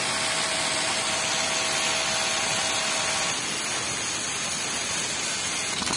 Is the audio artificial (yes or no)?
no